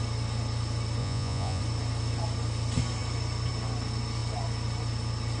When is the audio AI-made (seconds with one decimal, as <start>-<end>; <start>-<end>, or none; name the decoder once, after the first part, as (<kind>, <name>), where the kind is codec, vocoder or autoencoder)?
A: 1.0-1.6 (vocoder, Vocos)